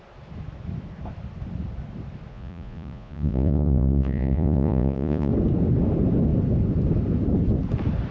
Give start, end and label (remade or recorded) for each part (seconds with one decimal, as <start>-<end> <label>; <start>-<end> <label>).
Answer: 0.0-2.3 recorded; 2.3-5.3 remade; 5.3-8.1 recorded